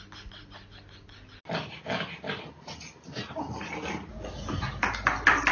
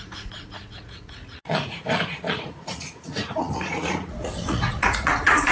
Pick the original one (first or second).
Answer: first